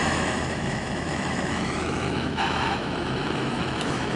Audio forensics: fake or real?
fake